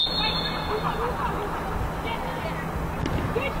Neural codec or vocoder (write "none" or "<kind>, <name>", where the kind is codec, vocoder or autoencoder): none